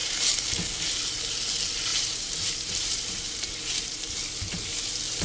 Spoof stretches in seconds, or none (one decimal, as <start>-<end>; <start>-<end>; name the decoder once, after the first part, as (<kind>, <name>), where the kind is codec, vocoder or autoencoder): 0.0-1.0 (vocoder, BigVGAN v2); 1.9-4.8